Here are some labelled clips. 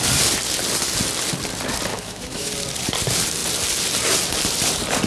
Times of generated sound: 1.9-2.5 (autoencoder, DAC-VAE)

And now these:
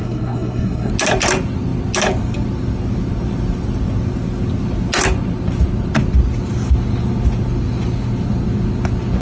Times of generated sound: 0.0-0.9 (codec, SNAC)

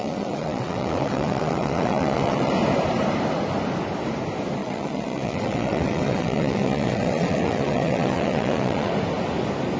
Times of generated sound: 0.0-2.5 (vocoder, WaveNeXt); 4.6-8.9

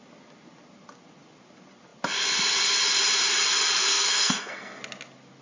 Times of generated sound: 3.8-4.8 (codec, SNAC)

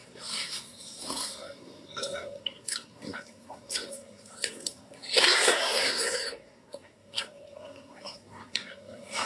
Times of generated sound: 0.0-9.3 (codec, SNAC)

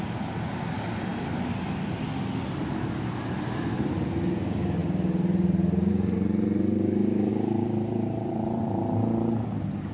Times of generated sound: 7.3-8.6 (vocoder, BigVGAN v2)

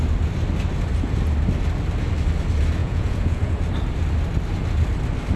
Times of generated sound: 2.8-3.6 (vocoder, Vocos)

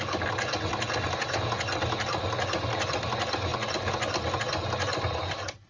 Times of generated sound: 0.7-1.4 (vocoder, BigVGAN v2)